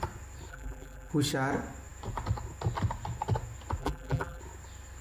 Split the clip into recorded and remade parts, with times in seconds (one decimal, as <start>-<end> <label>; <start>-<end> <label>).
0.0-0.5 recorded; 0.5-1.1 remade; 1.1-3.8 recorded; 3.8-4.4 remade; 4.4-5.0 recorded